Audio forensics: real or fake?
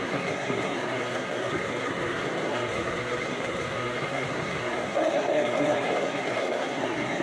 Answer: fake